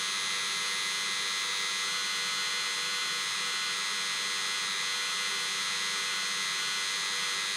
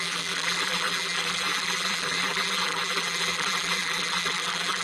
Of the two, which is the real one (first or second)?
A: first